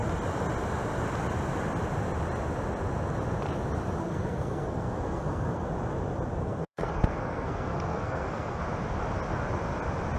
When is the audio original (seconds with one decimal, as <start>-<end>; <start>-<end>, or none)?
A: 0.0-4.0; 5.7-6.4; 8.6-10.2